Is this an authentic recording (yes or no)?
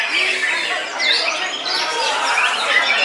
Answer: yes